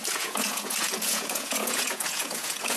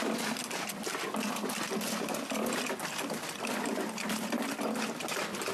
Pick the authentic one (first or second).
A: second